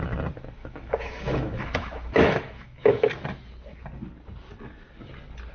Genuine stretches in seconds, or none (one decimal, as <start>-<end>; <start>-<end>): 0.0-0.6; 3.1-5.5